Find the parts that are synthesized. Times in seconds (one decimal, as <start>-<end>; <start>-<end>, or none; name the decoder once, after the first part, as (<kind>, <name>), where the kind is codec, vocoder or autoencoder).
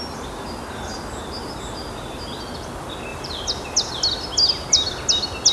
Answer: 3.1-3.9 (vocoder, BigVGAN v2)